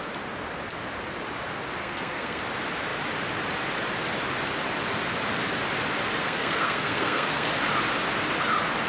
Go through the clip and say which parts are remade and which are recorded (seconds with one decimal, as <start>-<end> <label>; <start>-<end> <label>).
0.0-1.8 recorded; 1.8-2.4 remade; 2.4-6.2 recorded; 6.2-7.5 remade; 7.5-8.9 recorded